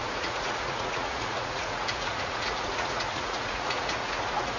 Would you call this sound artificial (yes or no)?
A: yes